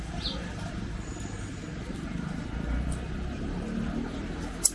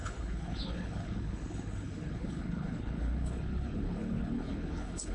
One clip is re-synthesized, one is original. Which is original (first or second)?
first